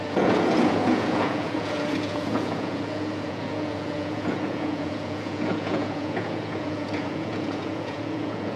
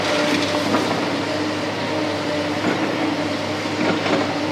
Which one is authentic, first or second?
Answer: second